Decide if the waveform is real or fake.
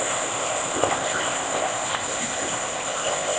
fake